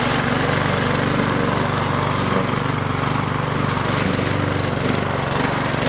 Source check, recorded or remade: recorded